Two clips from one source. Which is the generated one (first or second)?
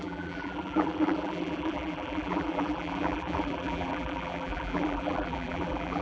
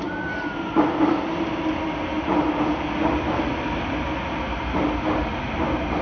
first